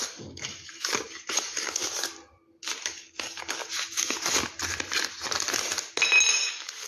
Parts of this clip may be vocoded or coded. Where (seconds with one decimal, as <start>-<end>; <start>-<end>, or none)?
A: 0.0-1.8; 2.8-3.6; 6.3-6.9